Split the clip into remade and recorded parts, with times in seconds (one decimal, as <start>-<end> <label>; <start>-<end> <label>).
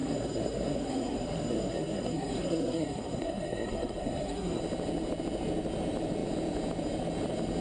0.0-4.6 remade; 4.6-7.6 recorded